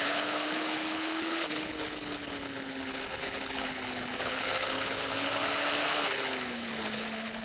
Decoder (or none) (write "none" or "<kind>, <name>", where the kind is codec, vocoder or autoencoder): codec, HILCodec